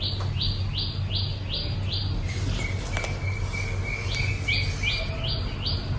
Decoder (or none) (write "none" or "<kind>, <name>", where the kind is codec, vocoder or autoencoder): none